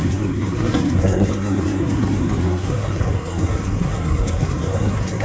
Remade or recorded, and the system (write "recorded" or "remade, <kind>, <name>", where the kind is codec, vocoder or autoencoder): remade, codec, SNAC